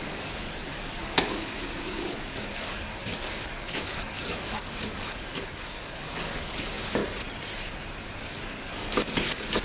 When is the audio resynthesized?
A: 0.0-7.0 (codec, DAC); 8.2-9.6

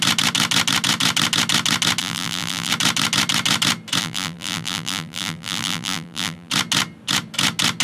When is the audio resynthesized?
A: 2.0-2.7 (vocoder, BigVGAN v2); 4.0-6.5